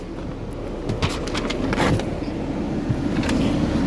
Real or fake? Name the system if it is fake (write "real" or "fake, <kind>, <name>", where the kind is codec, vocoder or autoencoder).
real